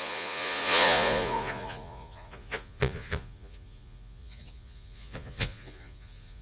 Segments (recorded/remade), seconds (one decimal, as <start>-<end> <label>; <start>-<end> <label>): 0.0-6.4 remade